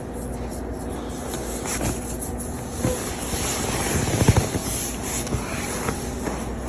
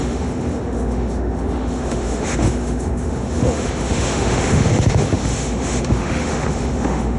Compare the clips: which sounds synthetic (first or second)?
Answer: second